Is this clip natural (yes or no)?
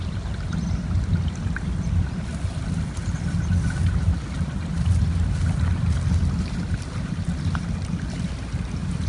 yes